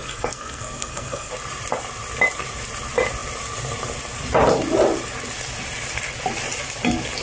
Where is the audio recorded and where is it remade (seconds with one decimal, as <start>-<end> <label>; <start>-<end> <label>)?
0.0-1.3 remade; 1.3-7.2 recorded